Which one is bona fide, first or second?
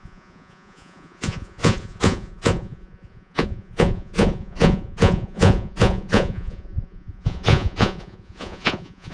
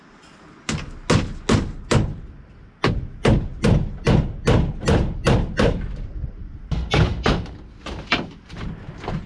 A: second